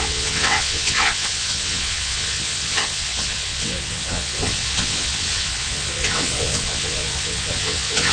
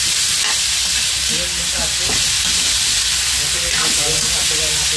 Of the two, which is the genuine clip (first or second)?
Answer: second